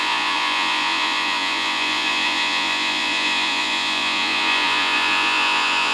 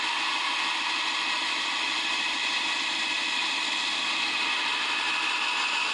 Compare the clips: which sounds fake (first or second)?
first